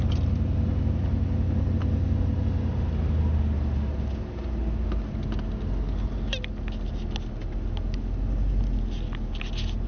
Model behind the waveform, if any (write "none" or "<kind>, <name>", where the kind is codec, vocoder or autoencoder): none